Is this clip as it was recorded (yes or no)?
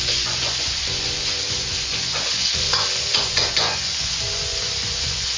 no